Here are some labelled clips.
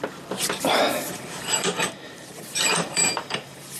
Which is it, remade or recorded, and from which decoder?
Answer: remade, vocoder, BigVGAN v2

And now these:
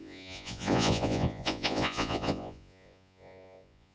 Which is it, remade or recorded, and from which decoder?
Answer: remade, vocoder, Vocos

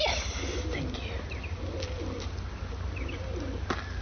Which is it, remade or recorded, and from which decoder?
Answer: recorded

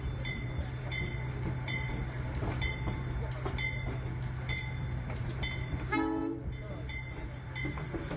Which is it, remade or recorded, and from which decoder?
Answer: recorded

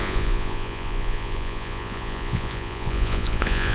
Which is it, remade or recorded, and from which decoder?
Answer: remade, vocoder, Vocos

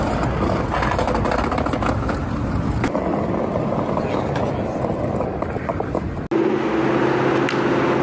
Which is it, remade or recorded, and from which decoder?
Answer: recorded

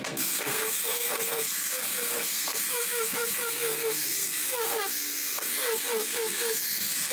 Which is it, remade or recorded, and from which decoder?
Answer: remade, codec, SNAC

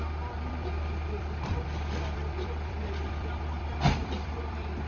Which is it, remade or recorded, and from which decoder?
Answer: remade, vocoder, BigVGAN v2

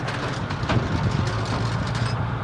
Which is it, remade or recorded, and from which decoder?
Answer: remade, vocoder, BigVGAN v2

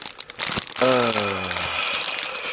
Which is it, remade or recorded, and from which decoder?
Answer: recorded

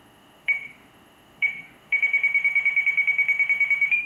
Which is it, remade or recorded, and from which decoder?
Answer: remade, autoencoder, DAC-VAE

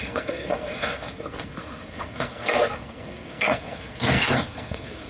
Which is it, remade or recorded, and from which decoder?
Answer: remade, codec, SNAC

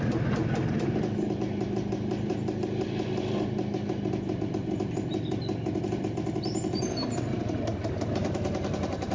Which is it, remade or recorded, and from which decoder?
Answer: recorded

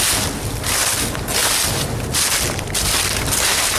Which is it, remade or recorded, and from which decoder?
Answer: recorded